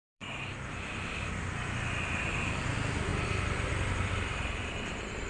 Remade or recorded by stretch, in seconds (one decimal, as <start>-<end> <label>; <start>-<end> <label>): 0.0-3.1 remade; 3.1-3.9 recorded; 3.9-5.3 remade